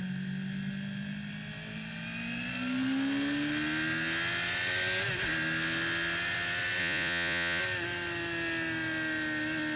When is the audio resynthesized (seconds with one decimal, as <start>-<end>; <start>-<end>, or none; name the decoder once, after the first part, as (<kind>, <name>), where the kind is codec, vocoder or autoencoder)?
6.8-7.6 (vocoder, Vocos)